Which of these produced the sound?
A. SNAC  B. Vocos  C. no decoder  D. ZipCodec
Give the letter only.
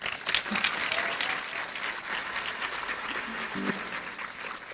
C